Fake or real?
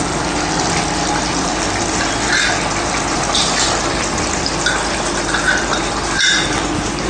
real